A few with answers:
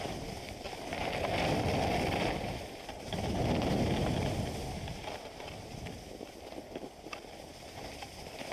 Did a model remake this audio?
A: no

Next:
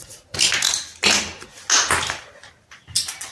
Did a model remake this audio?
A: no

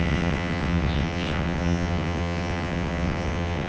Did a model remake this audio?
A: yes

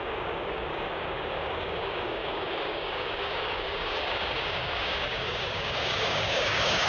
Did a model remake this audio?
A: yes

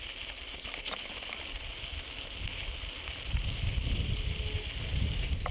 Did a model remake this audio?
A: no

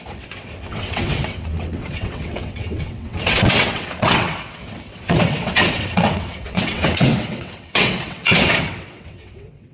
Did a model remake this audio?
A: yes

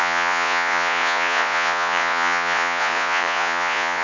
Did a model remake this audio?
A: yes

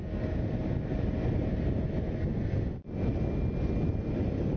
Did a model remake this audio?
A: no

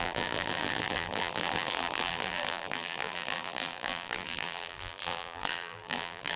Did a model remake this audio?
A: yes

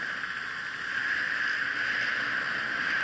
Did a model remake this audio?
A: no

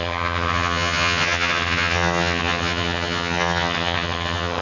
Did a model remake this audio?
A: yes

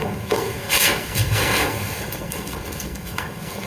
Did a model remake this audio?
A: yes